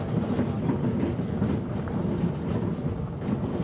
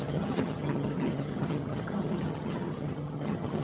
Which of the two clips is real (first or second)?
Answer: first